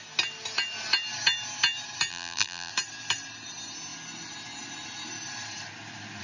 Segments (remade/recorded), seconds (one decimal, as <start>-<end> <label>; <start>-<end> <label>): 0.0-2.1 recorded; 2.1-2.7 remade; 2.7-6.2 recorded